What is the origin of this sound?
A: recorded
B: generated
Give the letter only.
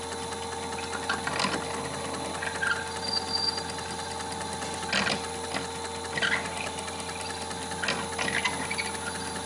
A